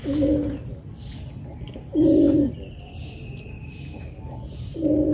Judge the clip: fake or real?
real